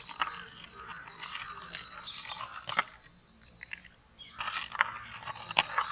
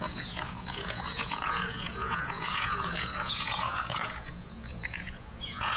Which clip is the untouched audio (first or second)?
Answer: first